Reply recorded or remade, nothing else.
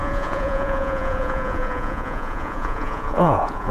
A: remade